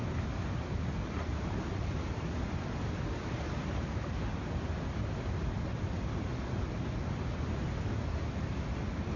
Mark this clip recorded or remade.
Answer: recorded